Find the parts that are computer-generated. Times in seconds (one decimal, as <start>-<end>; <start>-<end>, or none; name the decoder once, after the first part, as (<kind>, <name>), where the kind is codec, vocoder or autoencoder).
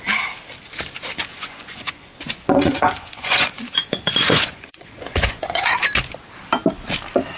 1.3-5.7 (vocoder, Vocos)